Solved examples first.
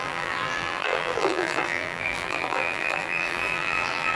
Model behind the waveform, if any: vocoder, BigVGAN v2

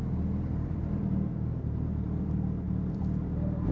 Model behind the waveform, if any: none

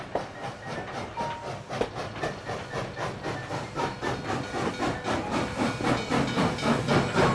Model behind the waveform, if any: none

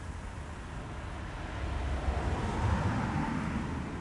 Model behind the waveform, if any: none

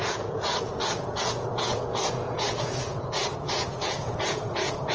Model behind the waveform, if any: vocoder, Vocos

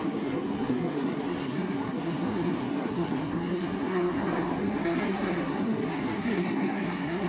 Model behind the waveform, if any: codec, SNAC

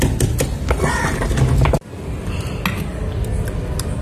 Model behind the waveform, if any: none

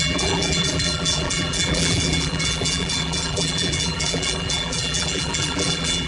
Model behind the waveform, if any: vocoder, BigVGAN v2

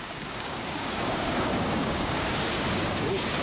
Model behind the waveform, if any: codec, DAC